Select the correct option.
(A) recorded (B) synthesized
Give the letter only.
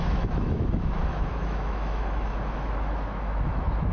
B